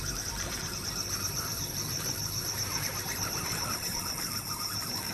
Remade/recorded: remade